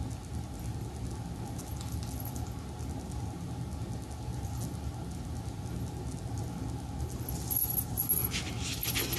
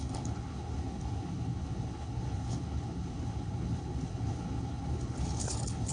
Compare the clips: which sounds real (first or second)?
first